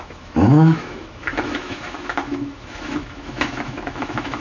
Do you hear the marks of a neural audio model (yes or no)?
yes